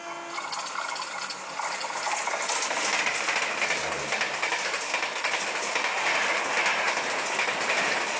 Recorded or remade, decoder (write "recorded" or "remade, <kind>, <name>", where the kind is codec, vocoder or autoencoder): recorded